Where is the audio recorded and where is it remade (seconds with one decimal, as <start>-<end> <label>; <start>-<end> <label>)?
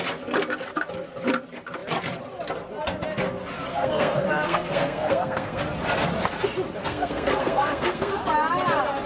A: 0.0-3.7 recorded; 3.7-5.6 remade; 5.6-6.8 recorded; 6.8-8.2 remade; 8.2-9.1 recorded